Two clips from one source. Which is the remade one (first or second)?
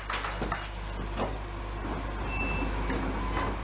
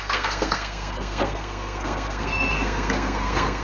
second